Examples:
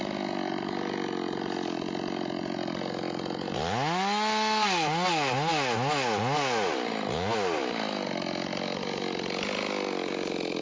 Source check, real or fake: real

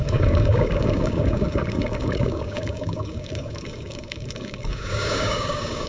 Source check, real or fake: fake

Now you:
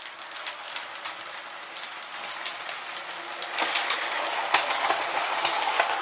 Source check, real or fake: real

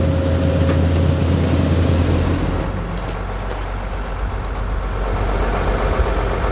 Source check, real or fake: real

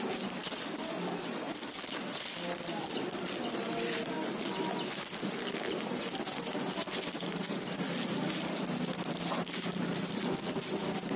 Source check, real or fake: real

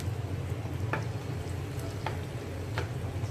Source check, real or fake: real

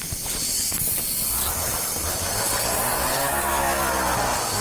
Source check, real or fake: real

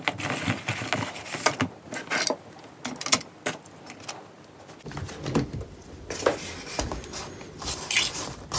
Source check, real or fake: real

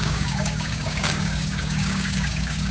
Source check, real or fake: fake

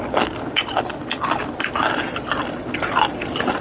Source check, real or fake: real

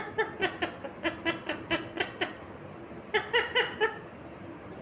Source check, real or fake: real